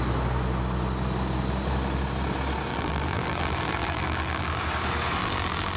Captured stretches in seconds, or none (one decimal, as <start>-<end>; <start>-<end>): 0.0-2.7; 4.6-5.2